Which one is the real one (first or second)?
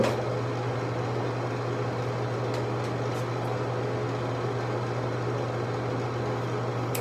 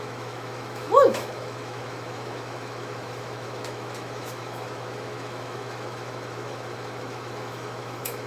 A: first